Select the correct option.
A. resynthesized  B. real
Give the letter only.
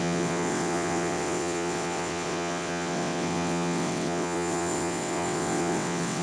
A